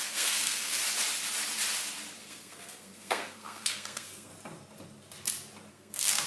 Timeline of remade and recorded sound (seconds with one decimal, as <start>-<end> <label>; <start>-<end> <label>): 0.0-0.8 remade; 0.8-2.2 recorded; 2.2-4.3 remade; 4.3-5.7 recorded; 5.7-6.3 remade